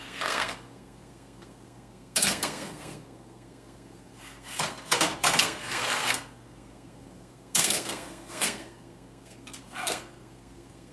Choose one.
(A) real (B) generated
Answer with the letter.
B